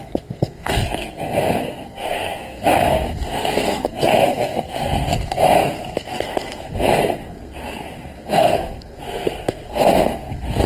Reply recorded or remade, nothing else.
remade